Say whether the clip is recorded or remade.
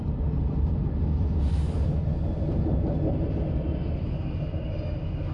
recorded